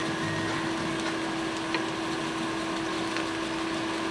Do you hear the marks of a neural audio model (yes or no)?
no